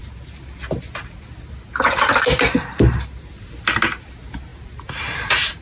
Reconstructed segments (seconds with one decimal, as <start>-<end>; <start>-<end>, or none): 4.5-5.6